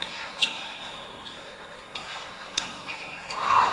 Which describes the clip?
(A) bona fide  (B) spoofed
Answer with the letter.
B